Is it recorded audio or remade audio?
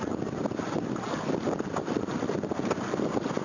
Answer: recorded